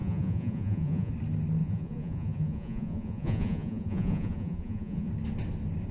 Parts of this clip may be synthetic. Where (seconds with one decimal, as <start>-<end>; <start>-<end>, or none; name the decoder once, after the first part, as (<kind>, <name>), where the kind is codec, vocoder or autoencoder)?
0.0-1.1 (vocoder, Vocos); 1.6-5.1